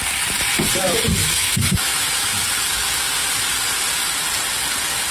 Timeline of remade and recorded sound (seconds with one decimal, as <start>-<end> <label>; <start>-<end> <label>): 0.0-1.2 recorded; 1.2-2.5 remade; 2.5-5.1 recorded